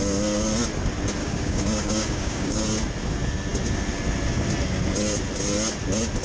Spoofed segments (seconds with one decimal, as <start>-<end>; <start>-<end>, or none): 1.2-2.6